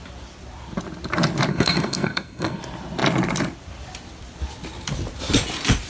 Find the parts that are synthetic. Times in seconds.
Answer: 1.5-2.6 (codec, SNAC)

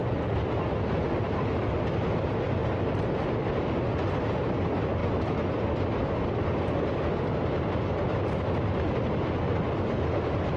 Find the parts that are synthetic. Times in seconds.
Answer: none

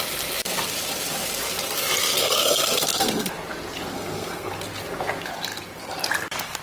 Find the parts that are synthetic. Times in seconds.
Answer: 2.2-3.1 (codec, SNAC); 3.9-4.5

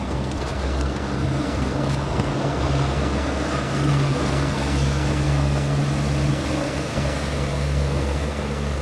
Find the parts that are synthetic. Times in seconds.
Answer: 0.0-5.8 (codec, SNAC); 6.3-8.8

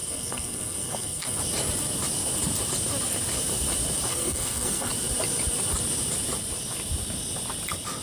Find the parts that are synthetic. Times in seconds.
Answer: 0.0-1.4 (codec, SNAC); 4.1-4.9